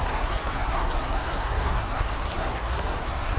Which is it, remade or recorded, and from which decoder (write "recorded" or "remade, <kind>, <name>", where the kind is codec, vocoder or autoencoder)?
remade, codec, SNAC